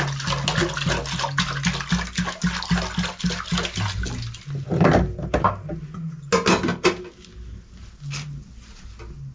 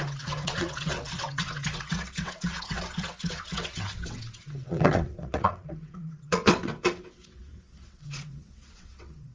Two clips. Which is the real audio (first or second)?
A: first